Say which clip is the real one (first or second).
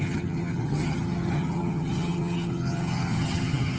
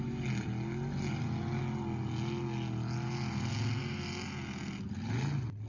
second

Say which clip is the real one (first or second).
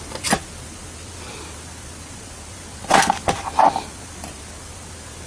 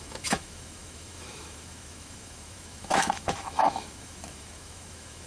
first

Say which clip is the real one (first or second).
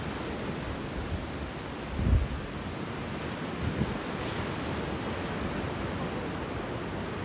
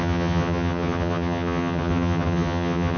first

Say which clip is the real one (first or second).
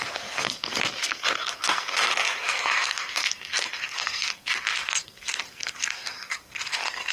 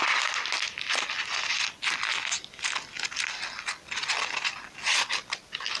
second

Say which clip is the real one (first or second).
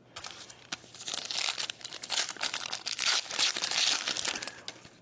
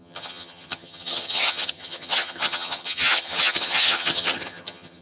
first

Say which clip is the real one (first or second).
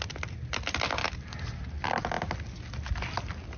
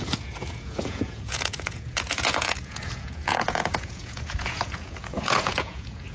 first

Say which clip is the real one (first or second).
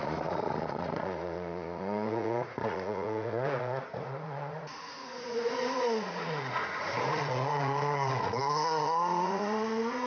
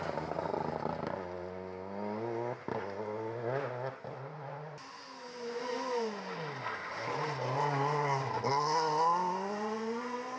second